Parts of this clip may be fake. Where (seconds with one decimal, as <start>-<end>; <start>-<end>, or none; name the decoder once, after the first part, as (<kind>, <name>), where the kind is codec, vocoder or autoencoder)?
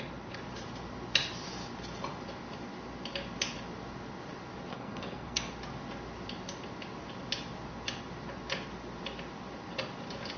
4.7-5.5 (codec, SNAC)